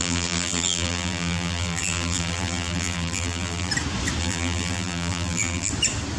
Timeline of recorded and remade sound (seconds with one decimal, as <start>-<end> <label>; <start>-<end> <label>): 0.0-3.7 remade; 3.7-4.2 recorded; 4.2-5.7 remade; 5.7-6.2 recorded